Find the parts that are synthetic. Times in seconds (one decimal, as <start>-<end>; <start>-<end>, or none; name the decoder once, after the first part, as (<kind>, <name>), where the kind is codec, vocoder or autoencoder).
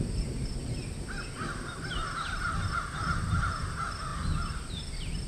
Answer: none